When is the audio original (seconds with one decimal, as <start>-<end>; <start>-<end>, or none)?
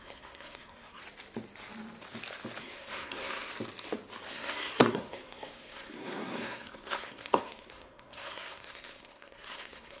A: 1.0-2.6; 3.5-4.3